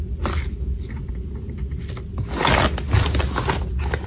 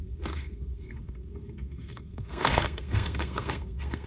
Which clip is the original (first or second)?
first